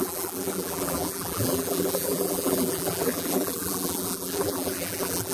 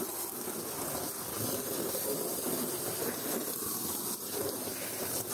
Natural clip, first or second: second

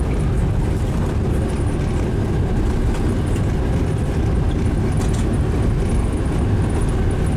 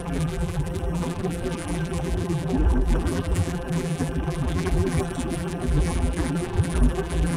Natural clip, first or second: first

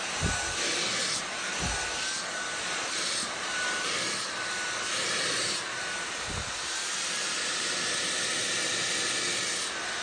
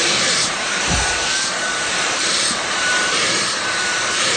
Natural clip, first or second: first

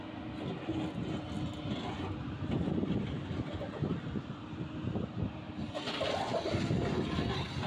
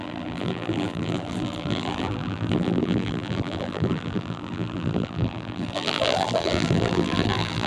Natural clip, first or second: first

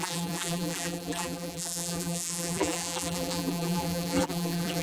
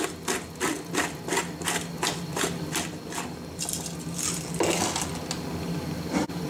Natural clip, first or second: second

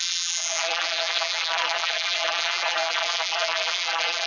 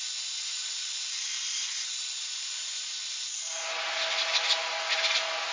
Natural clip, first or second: second